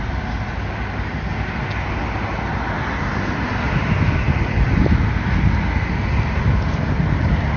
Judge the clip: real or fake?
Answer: real